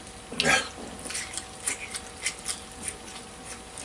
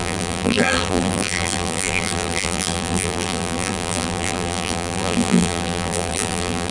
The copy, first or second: second